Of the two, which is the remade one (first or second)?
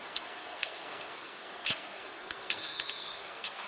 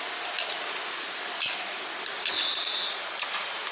first